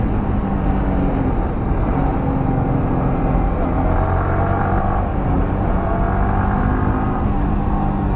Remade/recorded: recorded